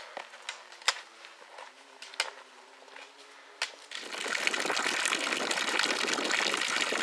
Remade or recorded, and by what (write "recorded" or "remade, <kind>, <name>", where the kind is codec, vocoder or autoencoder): recorded